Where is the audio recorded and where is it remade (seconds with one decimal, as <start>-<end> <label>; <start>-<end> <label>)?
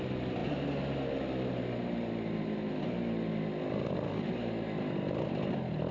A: 0.0-5.9 recorded